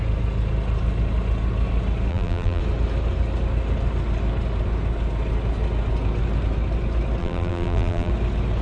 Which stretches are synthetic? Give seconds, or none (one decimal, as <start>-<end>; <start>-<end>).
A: 2.1-2.6; 7.2-8.1